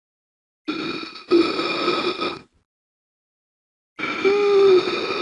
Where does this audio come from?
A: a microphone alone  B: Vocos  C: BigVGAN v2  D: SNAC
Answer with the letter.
A